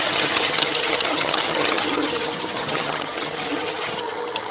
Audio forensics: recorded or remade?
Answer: remade